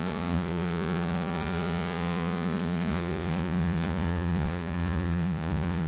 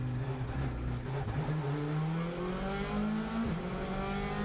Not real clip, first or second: first